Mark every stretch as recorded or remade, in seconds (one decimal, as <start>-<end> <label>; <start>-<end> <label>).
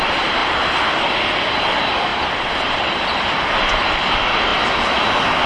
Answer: 0.0-0.4 recorded; 0.4-1.4 remade; 1.4-2.1 recorded; 2.1-3.9 remade; 3.9-5.5 recorded